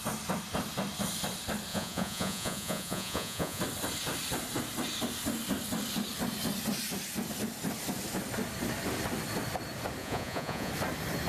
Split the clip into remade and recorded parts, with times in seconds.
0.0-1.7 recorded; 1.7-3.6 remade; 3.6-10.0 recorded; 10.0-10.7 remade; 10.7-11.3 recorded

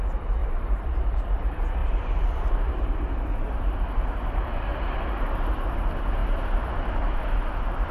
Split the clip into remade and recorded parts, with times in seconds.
0.0-0.4 recorded; 0.4-1.2 remade; 1.2-1.8 recorded; 1.8-2.8 remade; 2.8-4.7 recorded; 4.7-5.5 remade; 5.5-6.2 recorded; 6.2-7.2 remade; 7.2-7.9 recorded

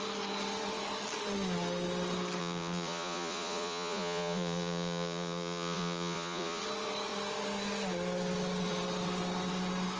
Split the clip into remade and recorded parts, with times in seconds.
0.0-2.4 recorded; 2.4-6.6 remade; 6.6-10.0 recorded

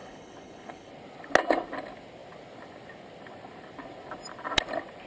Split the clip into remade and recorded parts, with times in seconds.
0.0-0.9 remade; 0.9-5.1 recorded

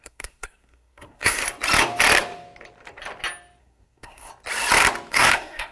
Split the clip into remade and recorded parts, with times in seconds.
0.0-1.4 remade; 1.4-3.6 recorded; 3.6-4.3 remade; 4.3-5.1 recorded; 5.1-5.7 remade

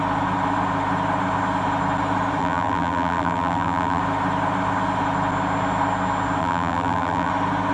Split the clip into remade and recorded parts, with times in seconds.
0.0-2.4 recorded; 2.4-4.0 remade; 4.0-6.4 recorded; 6.4-7.3 remade; 7.3-7.7 recorded